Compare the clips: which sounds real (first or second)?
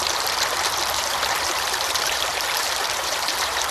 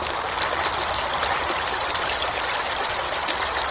second